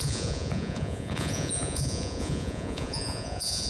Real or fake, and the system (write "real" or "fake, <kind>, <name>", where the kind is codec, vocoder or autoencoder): fake, vocoder, Vocos